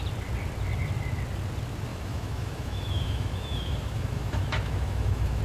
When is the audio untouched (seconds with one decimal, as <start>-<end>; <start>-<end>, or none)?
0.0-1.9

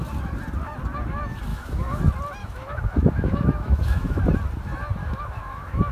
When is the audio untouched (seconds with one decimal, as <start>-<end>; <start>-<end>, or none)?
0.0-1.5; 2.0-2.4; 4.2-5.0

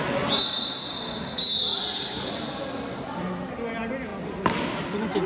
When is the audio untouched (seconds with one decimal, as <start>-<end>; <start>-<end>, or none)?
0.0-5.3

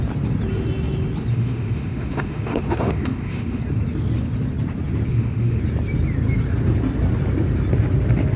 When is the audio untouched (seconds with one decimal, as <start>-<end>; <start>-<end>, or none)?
0.0-1.3; 3.6-5.1; 5.6-8.4

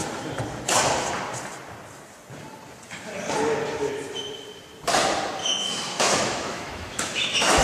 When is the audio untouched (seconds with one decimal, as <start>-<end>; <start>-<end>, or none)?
0.0-5.4

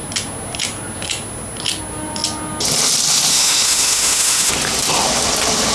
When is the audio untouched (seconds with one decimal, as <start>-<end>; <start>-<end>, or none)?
0.0-3.3; 4.5-5.7